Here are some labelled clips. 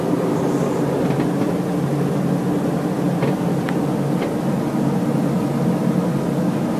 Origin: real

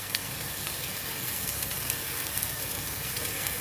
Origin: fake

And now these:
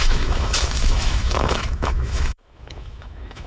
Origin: fake